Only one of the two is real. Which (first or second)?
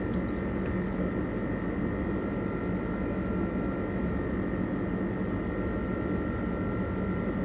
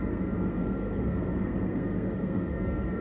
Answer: first